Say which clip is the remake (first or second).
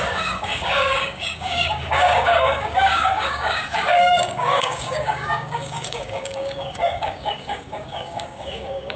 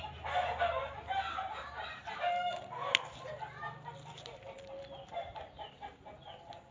first